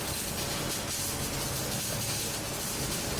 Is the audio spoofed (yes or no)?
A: no